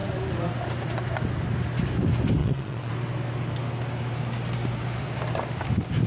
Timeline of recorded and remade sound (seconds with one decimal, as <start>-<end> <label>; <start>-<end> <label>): 0.0-2.4 recorded; 2.4-2.9 remade; 2.9-6.1 recorded